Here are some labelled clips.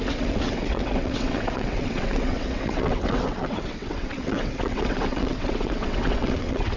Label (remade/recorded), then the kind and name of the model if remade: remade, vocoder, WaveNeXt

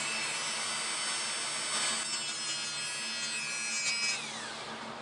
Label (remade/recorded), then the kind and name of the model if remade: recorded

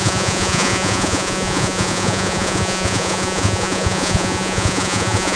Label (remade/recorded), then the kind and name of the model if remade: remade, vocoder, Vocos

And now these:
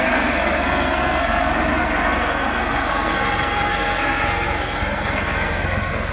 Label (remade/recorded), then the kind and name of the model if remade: remade, codec, SNAC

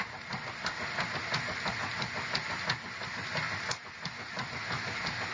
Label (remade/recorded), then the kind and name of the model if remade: recorded